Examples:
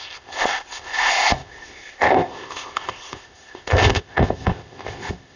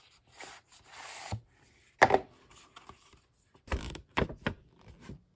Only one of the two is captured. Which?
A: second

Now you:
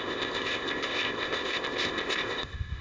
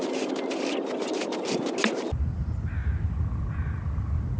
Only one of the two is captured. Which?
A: second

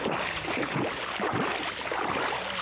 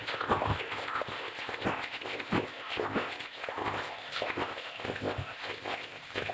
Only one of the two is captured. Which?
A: first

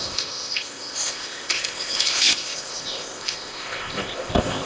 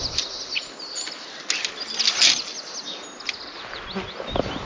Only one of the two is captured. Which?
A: second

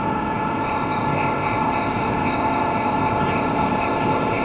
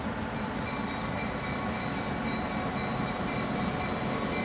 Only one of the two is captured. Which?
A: second